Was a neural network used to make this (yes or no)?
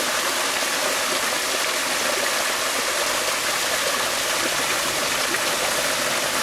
no